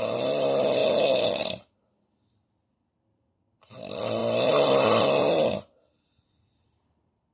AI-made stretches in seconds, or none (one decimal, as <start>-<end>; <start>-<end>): none